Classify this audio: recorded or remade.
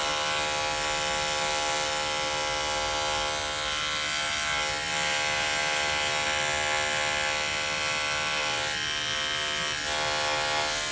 recorded